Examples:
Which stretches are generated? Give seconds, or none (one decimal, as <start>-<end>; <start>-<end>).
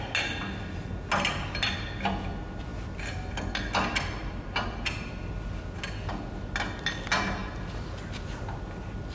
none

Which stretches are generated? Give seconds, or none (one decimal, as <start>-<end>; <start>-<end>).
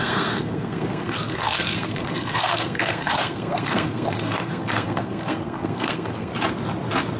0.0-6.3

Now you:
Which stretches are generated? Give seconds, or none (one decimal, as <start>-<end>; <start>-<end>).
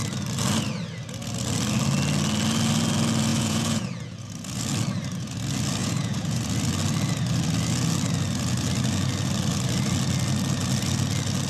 3.3-4.3; 5.8-6.4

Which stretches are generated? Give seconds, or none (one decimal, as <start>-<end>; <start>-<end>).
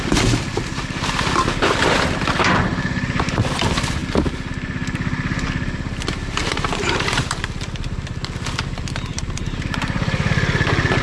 2.7-3.3; 6.4-7.4; 9.1-10.3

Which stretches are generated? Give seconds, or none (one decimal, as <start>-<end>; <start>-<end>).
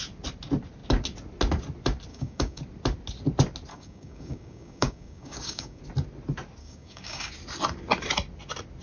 2.1-2.6; 3.7-5.8; 6.6-7.3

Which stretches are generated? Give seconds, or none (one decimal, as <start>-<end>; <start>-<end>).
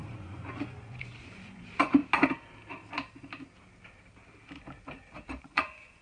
0.0-2.0; 5.4-6.0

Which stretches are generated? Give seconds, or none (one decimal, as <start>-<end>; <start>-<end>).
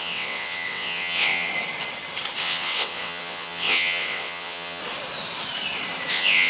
0.0-1.5; 2.4-4.8; 6.1-6.5